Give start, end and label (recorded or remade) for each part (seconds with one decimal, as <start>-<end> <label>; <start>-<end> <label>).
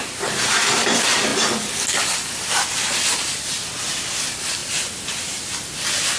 0.0-6.2 recorded